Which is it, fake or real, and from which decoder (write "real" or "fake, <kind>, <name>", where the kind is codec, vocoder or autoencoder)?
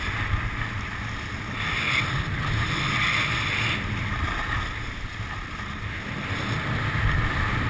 real